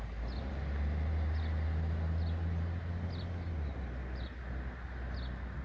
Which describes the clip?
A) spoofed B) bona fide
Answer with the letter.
B